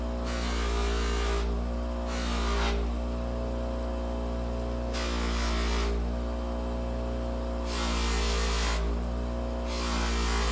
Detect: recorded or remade recorded